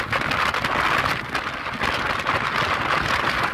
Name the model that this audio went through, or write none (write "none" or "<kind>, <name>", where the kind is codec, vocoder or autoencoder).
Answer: none